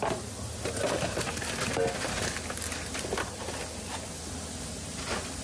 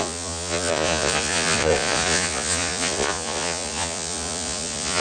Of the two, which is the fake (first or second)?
second